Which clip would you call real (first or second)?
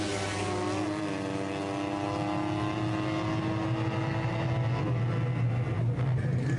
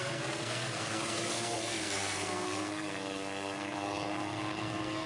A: first